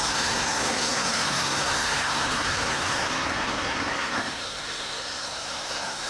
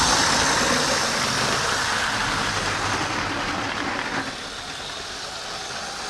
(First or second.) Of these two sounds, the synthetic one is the first